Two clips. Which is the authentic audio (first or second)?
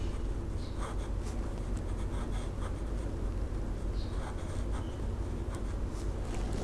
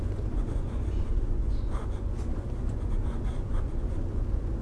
first